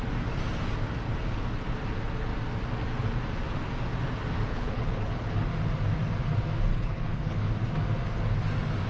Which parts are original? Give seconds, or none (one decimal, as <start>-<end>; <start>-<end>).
0.0-4.5; 5.5-6.7; 7.5-8.9